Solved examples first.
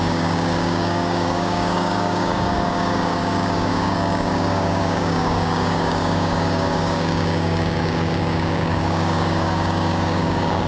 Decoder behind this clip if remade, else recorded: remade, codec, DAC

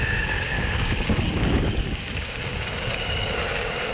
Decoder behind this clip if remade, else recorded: remade, codec, DAC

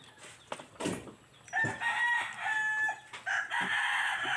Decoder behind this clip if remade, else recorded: recorded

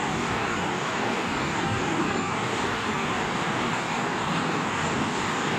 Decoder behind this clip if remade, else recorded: remade, codec, DAC